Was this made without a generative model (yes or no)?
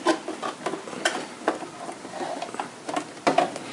yes